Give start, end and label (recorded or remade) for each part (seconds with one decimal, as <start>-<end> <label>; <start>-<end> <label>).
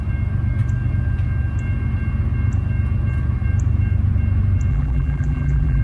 0.0-4.7 recorded; 4.7-5.8 remade